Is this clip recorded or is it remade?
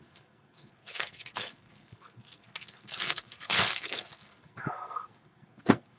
remade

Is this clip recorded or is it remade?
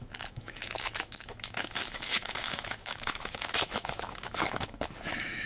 remade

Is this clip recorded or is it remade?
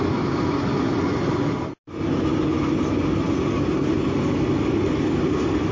recorded